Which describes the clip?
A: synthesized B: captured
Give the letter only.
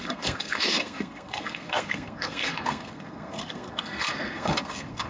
A